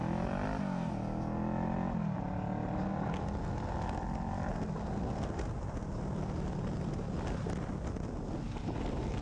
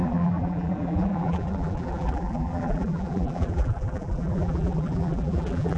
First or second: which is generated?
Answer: second